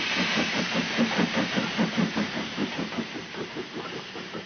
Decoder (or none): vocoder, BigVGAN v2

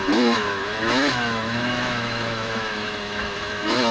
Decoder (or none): autoencoder, DAC-VAE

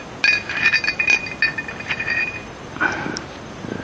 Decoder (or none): none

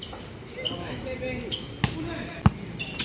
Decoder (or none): none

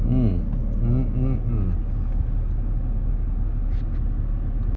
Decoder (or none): none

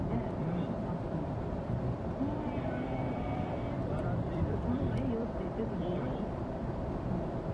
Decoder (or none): vocoder, BigVGAN v2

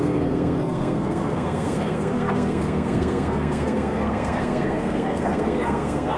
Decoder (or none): codec, SNAC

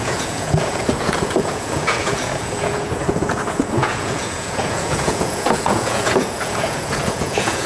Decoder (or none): vocoder, Vocos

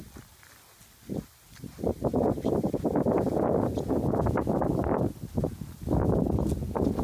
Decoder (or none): none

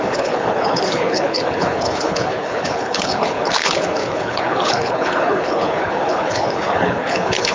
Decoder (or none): codec, HILCodec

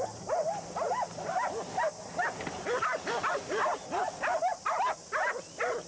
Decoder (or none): none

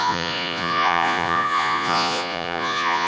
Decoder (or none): vocoder, Vocos